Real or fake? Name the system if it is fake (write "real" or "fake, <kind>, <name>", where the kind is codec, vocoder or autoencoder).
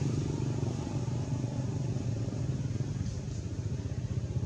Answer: real